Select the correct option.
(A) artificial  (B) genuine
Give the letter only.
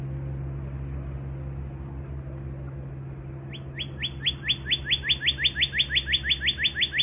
B